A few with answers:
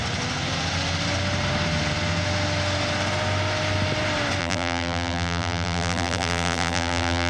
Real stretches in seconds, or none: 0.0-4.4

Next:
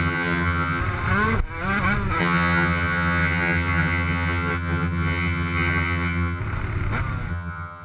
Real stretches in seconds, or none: 0.8-2.2; 6.4-7.3

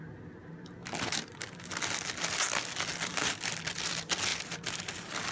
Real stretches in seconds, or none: 0.0-5.3

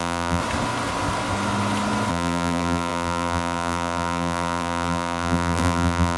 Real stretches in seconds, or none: 0.4-2.1

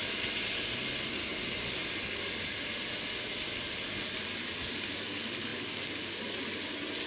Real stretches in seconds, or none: 0.0-7.1